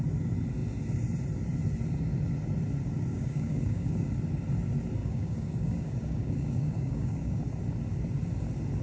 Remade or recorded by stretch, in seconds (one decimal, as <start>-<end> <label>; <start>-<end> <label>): 0.0-3.1 recorded; 3.1-4.1 remade; 4.1-5.0 recorded; 5.0-7.4 remade; 7.4-8.8 recorded